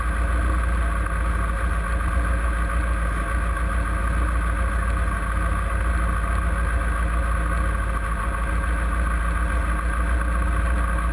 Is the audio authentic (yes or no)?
yes